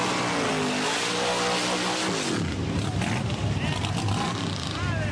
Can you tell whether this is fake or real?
real